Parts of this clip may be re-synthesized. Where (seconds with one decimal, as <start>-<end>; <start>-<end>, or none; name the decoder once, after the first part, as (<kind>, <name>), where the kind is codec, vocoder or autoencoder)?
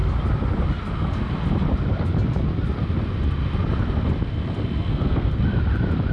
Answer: 4.9-5.4 (codec, SNAC)